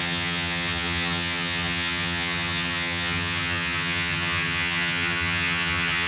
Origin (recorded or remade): remade